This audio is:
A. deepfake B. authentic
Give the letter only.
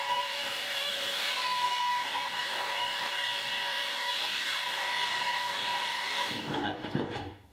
A